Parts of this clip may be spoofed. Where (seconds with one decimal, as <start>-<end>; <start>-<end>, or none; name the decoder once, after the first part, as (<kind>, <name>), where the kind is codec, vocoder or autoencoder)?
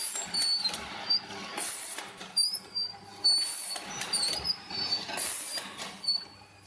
none